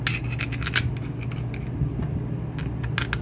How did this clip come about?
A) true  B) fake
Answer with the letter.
A